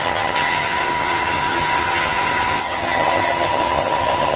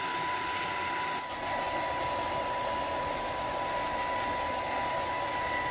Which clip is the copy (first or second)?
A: first